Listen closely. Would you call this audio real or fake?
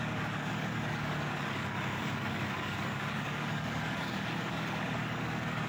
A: fake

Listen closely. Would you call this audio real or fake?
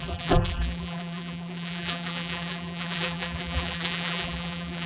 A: fake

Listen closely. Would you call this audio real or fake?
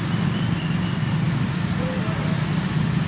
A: real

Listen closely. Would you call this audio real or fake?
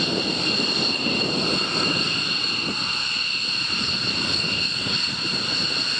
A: real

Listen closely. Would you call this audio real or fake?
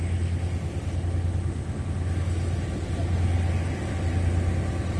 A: real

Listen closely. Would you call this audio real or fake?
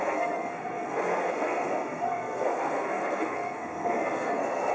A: fake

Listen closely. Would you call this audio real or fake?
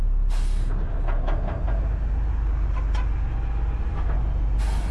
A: real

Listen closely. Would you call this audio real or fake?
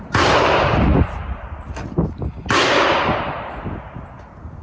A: real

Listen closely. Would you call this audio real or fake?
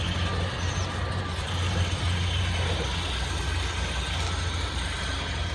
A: real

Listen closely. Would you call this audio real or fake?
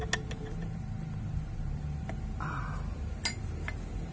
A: real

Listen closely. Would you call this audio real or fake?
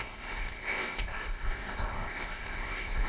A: fake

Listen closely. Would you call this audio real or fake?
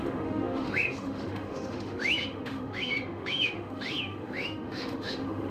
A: fake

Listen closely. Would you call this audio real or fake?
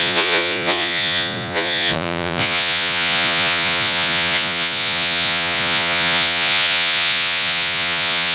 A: fake